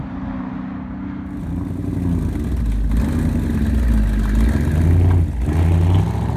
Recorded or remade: recorded